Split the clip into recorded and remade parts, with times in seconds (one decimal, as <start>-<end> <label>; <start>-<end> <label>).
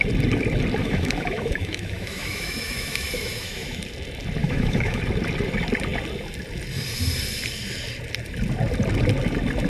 0.0-0.8 recorded; 0.8-3.8 remade; 3.8-4.4 recorded; 4.4-5.0 remade; 5.0-9.7 recorded